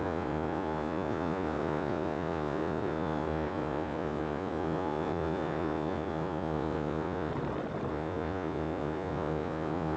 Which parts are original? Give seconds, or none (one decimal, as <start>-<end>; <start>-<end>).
7.3-7.9